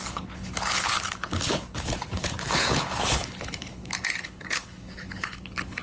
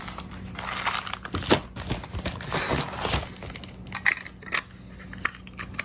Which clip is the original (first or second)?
second